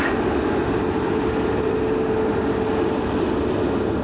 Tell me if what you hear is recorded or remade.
recorded